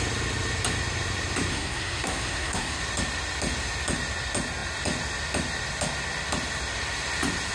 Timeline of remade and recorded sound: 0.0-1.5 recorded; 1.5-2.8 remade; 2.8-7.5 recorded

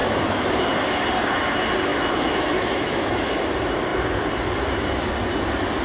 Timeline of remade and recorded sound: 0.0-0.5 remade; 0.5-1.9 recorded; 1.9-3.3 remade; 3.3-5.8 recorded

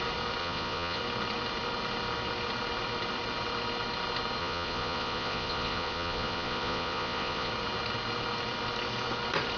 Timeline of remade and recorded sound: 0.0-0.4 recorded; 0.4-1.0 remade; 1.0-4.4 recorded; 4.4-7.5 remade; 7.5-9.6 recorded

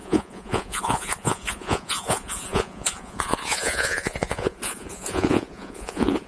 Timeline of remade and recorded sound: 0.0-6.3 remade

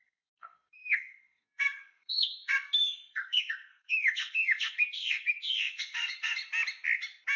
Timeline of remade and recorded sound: 0.0-6.4 remade; 6.4-7.4 recorded